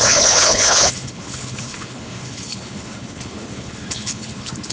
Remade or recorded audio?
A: remade